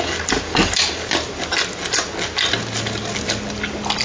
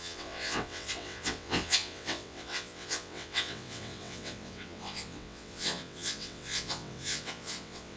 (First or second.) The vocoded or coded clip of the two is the second